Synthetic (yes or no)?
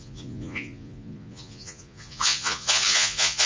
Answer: yes